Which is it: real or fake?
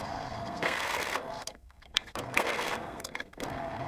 fake